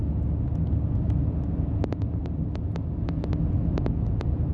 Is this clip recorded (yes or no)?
yes